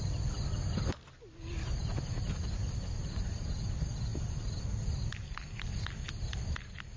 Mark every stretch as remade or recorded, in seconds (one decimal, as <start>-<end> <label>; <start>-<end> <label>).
0.0-7.0 recorded